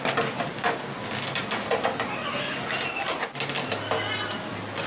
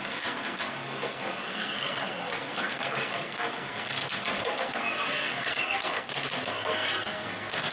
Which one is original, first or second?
first